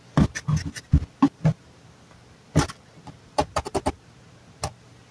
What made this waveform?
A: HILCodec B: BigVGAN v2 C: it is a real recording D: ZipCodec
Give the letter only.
C